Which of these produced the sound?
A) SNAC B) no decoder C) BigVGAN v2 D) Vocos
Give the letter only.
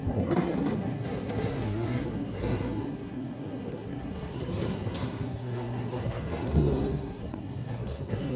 A